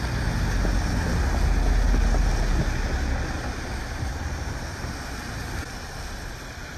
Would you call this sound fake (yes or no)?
no